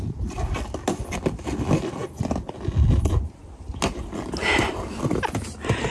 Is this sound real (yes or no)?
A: yes